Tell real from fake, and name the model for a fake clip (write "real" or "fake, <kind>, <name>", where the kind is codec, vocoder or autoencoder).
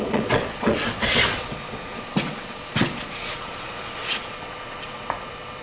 fake, vocoder, Vocos